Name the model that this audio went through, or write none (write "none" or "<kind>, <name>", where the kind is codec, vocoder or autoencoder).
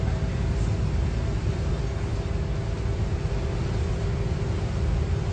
none